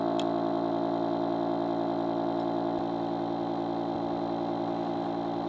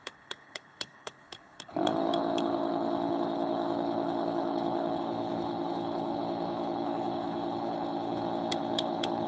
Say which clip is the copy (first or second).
second